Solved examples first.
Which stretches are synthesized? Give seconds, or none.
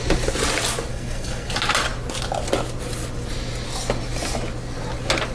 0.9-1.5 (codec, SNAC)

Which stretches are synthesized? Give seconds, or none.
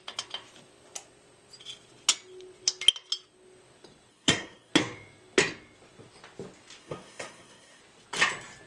4.1-4.7 (codec, SNAC); 6.8-7.8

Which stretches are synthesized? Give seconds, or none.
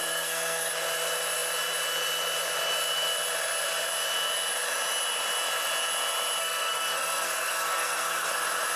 0.0-0.7 (codec, SNAC); 6.4-8.3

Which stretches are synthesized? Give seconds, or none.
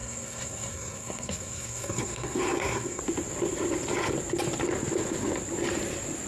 0.0-3.0 (codec, SNAC)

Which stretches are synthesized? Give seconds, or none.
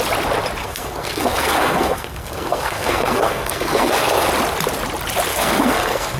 0.6-4.3 (codec, SNAC); 5.3-6.2